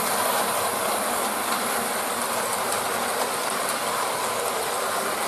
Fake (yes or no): no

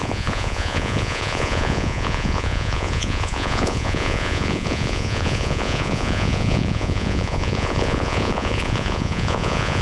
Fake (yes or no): yes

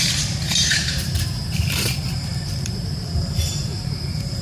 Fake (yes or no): yes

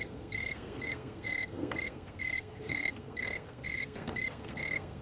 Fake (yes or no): yes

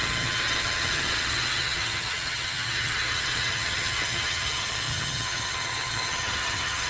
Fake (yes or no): yes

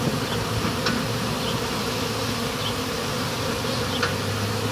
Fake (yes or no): no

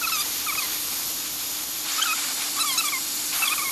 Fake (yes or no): no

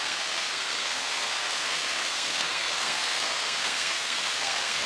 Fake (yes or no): yes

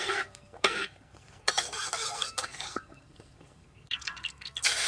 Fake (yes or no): yes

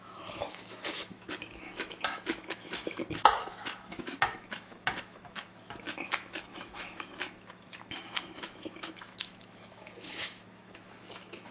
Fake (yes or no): yes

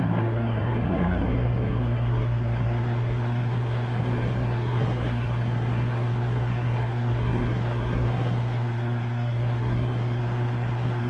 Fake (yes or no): yes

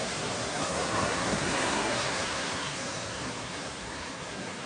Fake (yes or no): yes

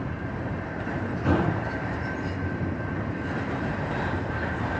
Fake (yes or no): yes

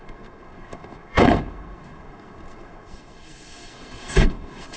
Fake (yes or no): yes